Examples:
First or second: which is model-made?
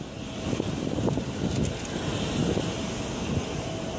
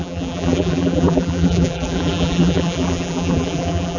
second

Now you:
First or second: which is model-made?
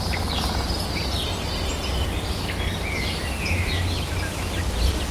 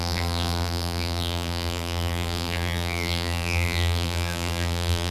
second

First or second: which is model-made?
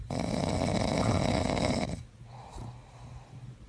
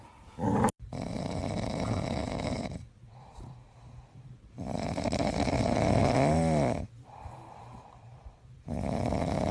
second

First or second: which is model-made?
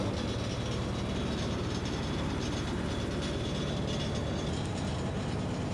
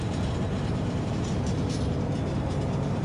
second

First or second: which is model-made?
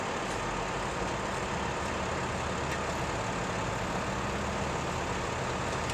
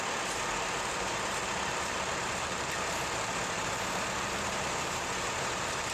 second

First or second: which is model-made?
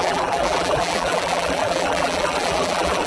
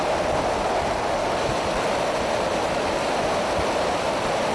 first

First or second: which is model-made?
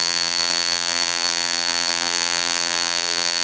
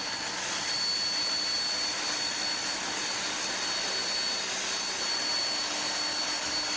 first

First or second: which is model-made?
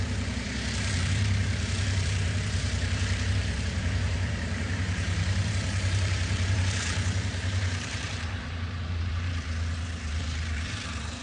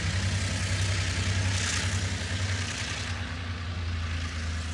first